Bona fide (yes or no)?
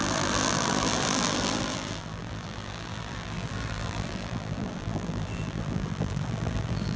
no